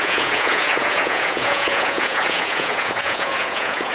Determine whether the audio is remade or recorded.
remade